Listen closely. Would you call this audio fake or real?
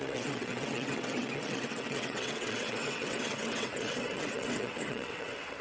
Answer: fake